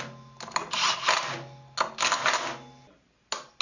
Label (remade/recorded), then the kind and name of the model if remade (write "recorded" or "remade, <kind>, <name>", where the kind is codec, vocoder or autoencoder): recorded